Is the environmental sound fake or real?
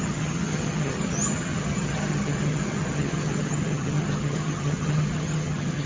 fake